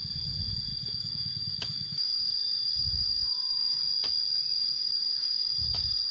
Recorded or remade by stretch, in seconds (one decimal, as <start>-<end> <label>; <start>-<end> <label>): 0.0-0.7 recorded; 0.7-3.8 remade; 3.8-4.6 recorded; 4.6-6.1 remade